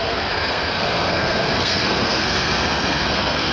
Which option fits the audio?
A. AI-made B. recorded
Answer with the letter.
A